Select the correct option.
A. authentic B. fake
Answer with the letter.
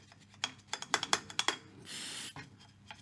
A